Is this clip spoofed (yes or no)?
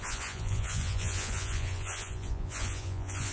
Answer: yes